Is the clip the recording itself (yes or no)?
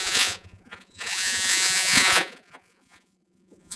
no